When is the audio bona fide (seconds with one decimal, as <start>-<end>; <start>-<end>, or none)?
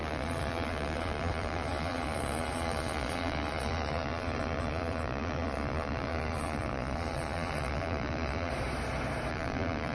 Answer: 8.5-9.3